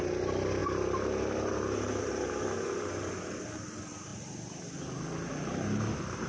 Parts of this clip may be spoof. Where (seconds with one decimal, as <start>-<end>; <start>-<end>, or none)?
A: none